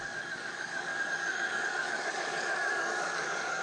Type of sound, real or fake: fake